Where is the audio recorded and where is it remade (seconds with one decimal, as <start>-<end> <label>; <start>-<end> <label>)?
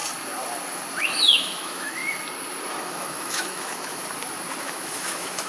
0.0-1.0 recorded; 1.0-2.0 remade; 2.0-2.8 recorded; 2.8-4.0 remade; 4.0-4.6 recorded; 4.6-5.5 remade